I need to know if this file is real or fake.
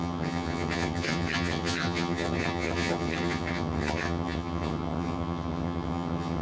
fake